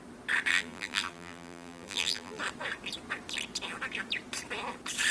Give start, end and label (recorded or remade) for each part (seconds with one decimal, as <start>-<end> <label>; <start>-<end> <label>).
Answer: 0.0-0.5 recorded; 0.5-2.4 remade; 2.4-5.1 recorded